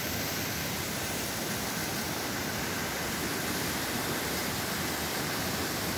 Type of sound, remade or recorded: recorded